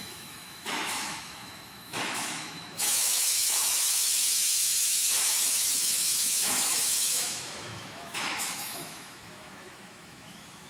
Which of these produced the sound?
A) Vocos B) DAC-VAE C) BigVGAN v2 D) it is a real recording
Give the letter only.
B